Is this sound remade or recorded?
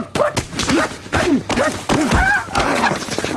remade